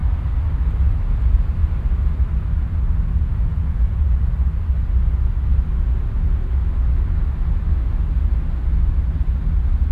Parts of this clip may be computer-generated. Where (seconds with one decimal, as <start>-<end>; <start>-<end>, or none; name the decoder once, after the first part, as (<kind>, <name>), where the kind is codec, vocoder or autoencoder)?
3.5-4.0 (vocoder, Vocos)